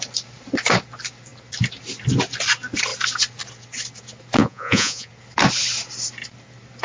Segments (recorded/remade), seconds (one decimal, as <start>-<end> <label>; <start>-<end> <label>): 0.0-4.4 recorded; 4.4-5.1 remade; 5.1-6.8 recorded